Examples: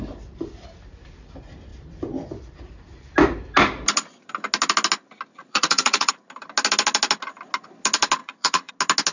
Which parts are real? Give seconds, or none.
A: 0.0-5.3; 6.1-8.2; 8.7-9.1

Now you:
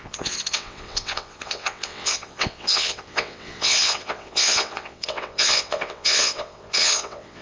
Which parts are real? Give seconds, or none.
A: none

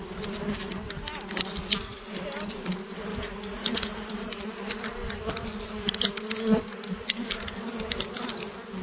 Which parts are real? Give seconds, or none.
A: 0.0-3.1; 4.4-8.8

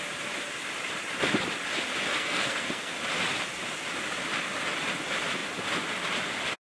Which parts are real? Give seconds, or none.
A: 0.0-2.1; 2.9-6.6

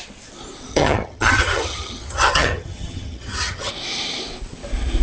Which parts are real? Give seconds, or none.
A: 0.0-0.7; 3.7-5.0

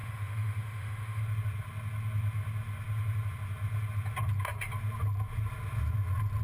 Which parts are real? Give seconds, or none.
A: 1.2-6.4